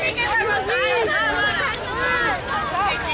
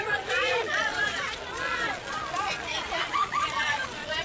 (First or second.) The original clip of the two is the first